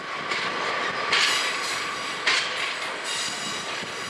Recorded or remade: recorded